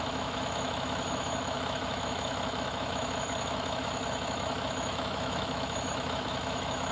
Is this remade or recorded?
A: remade